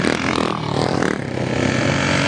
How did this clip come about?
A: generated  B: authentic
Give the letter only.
B